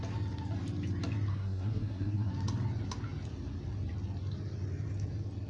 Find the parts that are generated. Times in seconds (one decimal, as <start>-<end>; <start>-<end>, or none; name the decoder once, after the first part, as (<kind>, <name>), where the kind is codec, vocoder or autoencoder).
1.3-2.3 (codec, SNAC)